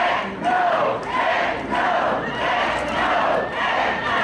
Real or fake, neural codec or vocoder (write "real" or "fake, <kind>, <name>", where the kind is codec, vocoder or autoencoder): fake, vocoder, BigVGAN v2